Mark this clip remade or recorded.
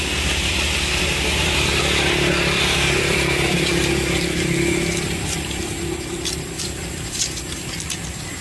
remade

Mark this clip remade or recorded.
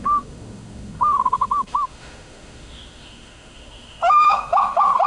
remade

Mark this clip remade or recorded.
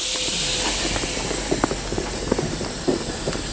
recorded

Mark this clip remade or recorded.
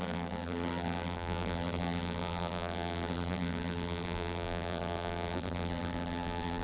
remade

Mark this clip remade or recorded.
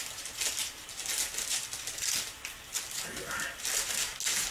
recorded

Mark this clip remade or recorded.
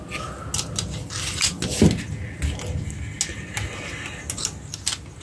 recorded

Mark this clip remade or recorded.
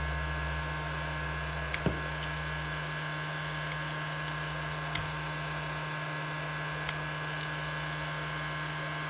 recorded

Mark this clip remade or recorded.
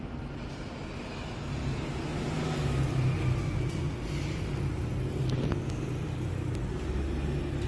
recorded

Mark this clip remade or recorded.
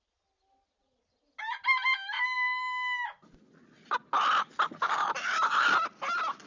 recorded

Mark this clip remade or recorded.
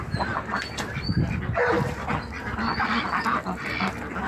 recorded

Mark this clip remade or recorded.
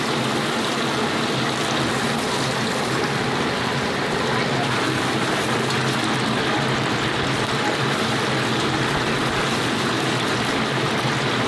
recorded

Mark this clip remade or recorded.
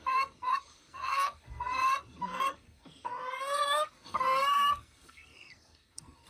remade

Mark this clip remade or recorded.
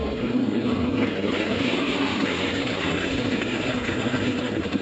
remade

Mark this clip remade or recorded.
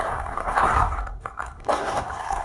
remade